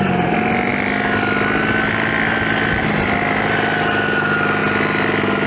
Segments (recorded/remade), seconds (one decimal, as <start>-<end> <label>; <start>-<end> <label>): 0.0-5.5 recorded